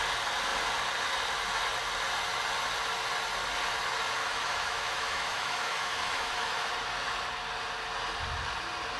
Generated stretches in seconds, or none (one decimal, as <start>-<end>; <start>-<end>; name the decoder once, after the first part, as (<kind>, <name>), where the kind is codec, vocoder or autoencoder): 4.2-6.7 (autoencoder, DAC-VAE)